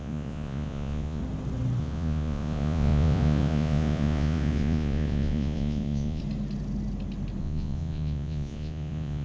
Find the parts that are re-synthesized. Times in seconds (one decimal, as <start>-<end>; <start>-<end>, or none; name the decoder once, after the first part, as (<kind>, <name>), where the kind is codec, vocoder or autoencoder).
0.0-1.2 (vocoder, Vocos); 1.8-6.2; 7.4-9.2